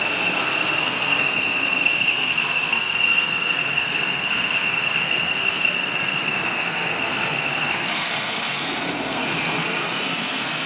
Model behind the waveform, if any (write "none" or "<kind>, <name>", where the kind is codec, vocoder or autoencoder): codec, SNAC